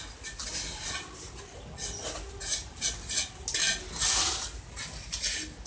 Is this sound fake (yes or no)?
no